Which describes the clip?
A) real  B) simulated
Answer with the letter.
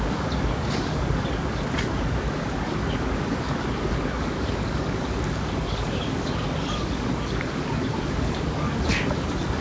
B